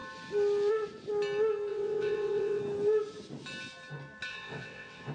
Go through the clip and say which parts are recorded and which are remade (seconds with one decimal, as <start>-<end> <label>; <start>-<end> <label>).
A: 0.0-1.7 recorded; 1.7-2.6 remade; 2.6-4.3 recorded; 4.3-5.1 remade